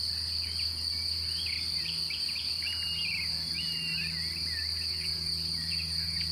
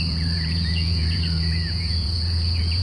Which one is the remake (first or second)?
second